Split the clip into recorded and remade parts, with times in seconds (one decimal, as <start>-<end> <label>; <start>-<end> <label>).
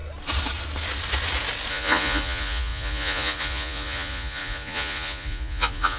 0.0-1.7 recorded; 1.7-6.0 remade